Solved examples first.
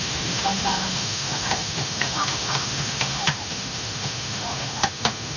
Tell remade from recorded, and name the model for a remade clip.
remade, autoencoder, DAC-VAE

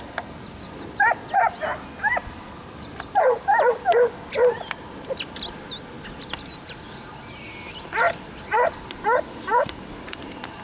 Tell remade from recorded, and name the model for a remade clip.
recorded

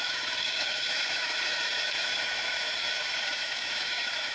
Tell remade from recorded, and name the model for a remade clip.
remade, autoencoder, DAC-VAE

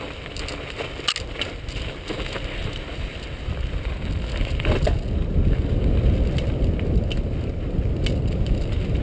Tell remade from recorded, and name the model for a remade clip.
recorded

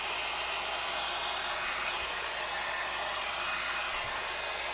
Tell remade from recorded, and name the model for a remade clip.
recorded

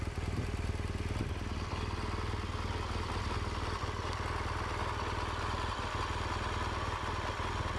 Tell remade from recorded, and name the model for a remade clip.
recorded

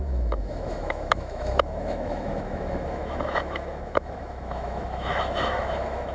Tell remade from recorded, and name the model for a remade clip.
remade, autoencoder, DAC-VAE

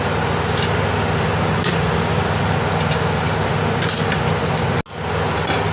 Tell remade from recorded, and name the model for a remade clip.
recorded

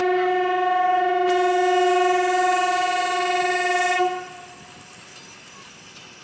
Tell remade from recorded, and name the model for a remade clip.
recorded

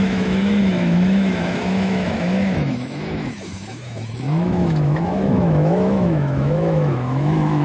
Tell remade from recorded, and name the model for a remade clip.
remade, autoencoder, DAC-VAE